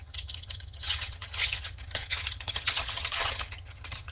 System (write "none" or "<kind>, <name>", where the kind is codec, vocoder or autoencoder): vocoder, HiFi-GAN